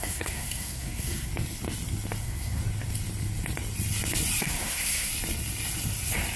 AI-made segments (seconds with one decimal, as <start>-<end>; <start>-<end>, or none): 0.0-1.3; 2.2-2.6; 4.4-5.1